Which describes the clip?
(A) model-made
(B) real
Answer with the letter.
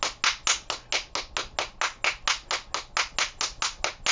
B